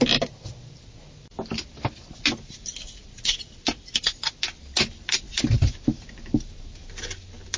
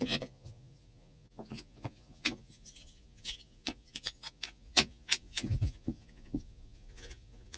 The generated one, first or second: second